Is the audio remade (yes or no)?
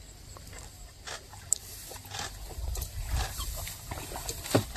no